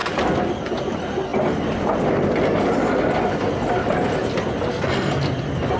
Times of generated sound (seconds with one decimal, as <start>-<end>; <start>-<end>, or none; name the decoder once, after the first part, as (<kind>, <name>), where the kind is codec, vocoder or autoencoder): 4.7-5.2 (codec, SNAC)